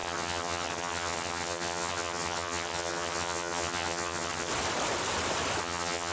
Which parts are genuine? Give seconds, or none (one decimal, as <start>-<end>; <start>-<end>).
4.5-5.6

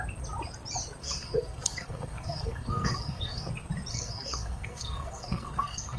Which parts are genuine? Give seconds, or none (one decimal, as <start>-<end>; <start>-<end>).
0.0-1.0; 3.5-3.9

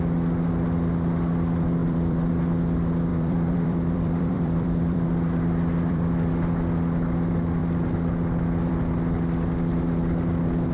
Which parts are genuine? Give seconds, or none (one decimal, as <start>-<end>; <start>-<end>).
0.0-1.8; 2.3-3.1; 6.3-10.7